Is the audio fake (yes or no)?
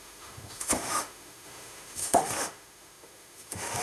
yes